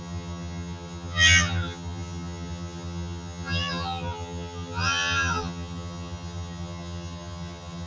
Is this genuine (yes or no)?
no